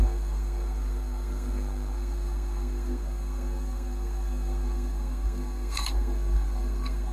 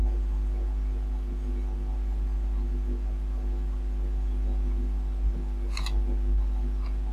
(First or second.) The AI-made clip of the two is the first